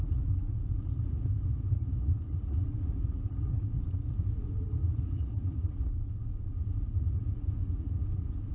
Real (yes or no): no